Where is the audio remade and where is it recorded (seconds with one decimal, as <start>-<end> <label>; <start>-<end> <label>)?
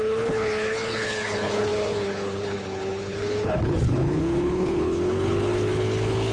0.0-6.3 remade